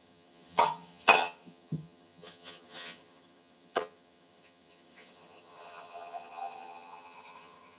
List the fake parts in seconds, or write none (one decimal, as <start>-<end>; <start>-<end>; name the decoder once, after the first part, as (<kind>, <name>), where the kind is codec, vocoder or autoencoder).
0.0-7.8 (vocoder, HiFi-GAN)